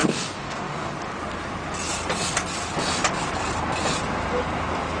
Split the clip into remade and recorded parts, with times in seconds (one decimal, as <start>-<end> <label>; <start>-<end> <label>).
0.0-0.9 remade; 0.9-5.0 recorded

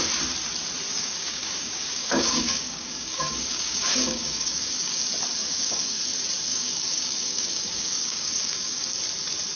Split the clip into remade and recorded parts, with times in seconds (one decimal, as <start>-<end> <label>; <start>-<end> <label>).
0.0-0.9 recorded; 0.9-5.0 remade; 5.0-5.4 recorded; 5.4-6.0 remade; 6.0-6.5 recorded; 6.5-8.9 remade; 8.9-9.6 recorded

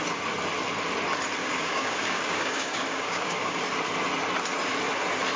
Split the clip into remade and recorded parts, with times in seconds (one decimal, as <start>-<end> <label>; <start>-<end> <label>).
0.0-1.4 recorded; 1.4-3.6 remade; 3.6-5.4 recorded

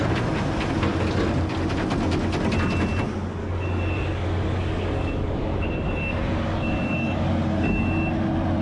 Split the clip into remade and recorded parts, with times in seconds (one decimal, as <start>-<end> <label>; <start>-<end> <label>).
0.0-3.4 recorded; 3.4-7.8 remade; 7.8-8.6 recorded

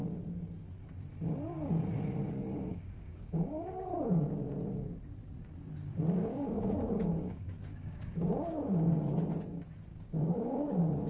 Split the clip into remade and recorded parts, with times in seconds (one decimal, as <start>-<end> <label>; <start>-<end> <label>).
0.0-2.7 recorded; 2.7-3.9 remade; 3.9-6.3 recorded; 6.3-8.8 remade; 8.8-9.9 recorded; 9.9-11.1 remade